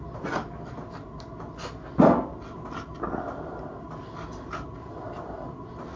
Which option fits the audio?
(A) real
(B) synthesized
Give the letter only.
A